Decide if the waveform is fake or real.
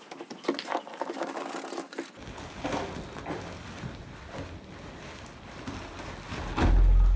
real